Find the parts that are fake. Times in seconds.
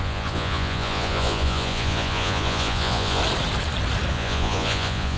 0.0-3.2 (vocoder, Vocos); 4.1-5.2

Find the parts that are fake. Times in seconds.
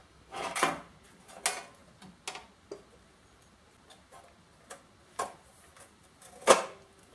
0.0-0.6 (codec, DAC)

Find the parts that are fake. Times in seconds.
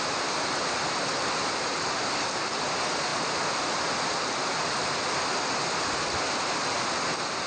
none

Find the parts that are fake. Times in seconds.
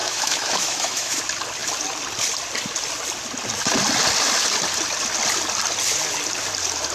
0.0-1.2 (autoencoder, DAC-VAE)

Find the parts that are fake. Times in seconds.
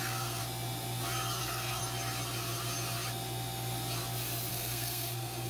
0.0-0.4 (codec, SNAC); 1.4-1.8; 4.5-5.5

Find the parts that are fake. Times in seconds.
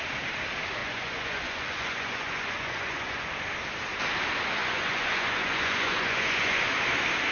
0.8-3.3 (vocoder, Vocos); 4.6-6.6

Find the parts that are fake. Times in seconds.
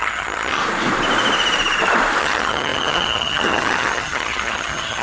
0.0-0.6 (vocoder, HiFi-GAN); 2.2-5.0